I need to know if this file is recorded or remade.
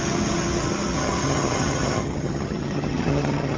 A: remade